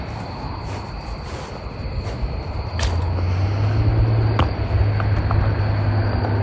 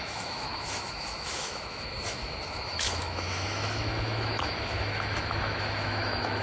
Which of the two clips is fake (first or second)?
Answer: second